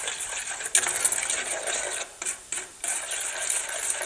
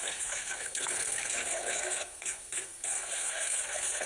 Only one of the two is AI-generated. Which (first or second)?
second